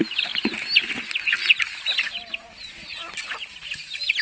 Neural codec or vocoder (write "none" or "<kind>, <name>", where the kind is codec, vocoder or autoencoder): none